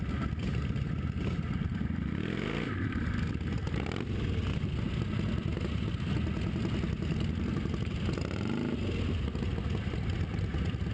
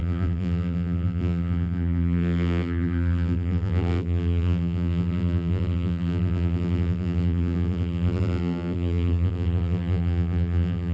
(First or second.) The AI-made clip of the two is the second